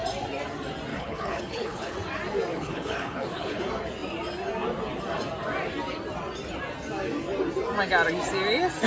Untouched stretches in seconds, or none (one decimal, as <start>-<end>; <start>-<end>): 0.0-0.9; 1.9-2.5; 3.6-8.9